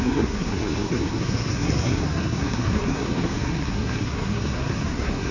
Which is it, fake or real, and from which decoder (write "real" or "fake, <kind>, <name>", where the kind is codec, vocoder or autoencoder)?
fake, codec, SNAC